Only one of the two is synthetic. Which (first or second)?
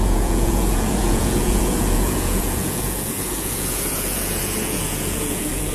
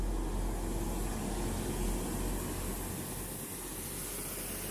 first